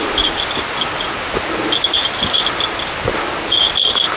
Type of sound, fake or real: real